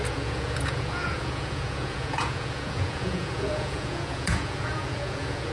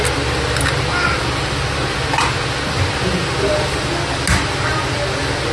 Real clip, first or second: second